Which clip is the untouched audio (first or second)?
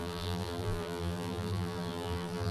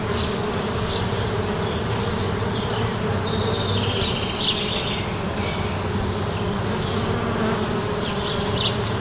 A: second